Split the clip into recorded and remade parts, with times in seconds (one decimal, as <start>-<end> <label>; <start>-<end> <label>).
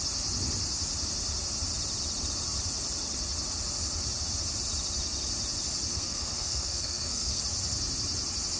0.0-5.9 recorded; 5.9-7.4 remade; 7.4-8.6 recorded